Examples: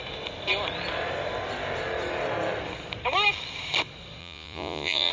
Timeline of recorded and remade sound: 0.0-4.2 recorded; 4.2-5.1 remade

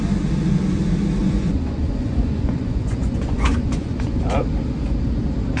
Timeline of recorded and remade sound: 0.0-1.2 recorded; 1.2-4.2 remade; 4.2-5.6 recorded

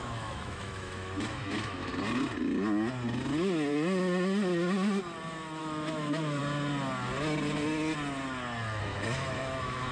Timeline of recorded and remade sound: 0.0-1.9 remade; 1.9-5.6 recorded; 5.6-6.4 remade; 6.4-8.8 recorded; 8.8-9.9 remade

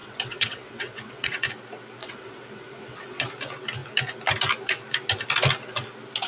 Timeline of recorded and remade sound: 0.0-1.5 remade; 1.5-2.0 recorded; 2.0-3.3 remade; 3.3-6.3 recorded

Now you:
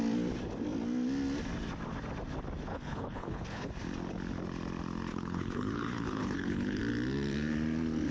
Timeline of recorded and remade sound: 0.0-2.7 recorded; 2.7-3.7 remade; 3.7-5.1 recorded; 5.1-6.8 remade; 6.8-8.1 recorded